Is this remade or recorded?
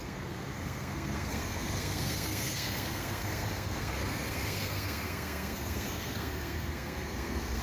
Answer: remade